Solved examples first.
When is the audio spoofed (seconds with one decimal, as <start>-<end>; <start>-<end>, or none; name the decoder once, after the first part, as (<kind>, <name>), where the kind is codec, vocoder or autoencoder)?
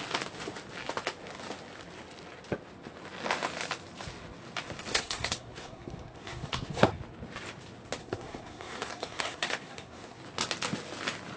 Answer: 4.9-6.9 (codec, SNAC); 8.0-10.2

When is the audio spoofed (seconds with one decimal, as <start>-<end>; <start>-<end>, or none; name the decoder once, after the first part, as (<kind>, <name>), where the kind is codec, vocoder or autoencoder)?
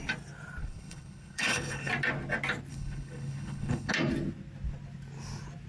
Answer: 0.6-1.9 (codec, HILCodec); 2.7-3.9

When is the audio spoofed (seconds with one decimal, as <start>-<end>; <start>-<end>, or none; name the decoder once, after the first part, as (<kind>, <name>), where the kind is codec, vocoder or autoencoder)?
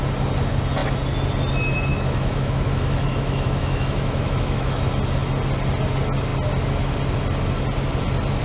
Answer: 1.9-4.8 (autoencoder, DAC-VAE)